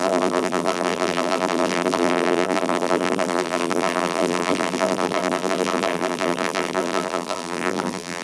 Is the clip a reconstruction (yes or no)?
yes